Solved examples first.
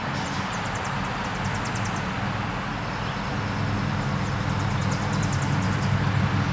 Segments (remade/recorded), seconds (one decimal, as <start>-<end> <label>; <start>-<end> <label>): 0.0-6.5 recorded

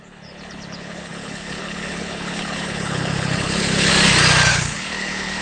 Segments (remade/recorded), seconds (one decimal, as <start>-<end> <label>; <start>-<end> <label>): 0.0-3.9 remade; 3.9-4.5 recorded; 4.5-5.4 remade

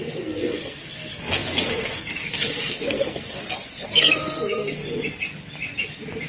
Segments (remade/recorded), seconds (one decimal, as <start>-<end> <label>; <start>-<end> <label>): 0.0-4.8 remade; 4.8-6.3 recorded

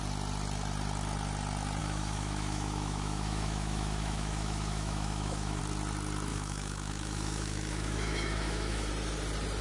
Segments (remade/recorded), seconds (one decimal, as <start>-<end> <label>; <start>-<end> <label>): 0.0-1.8 recorded; 1.8-5.6 remade; 5.6-6.3 recorded; 6.3-8.9 remade; 8.9-9.6 recorded